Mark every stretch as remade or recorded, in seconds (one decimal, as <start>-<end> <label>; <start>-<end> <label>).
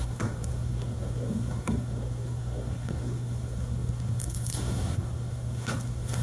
0.0-6.2 remade